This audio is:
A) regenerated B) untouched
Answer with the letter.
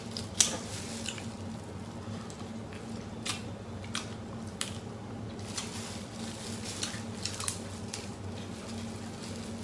B